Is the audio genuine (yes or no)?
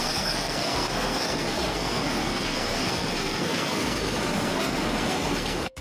no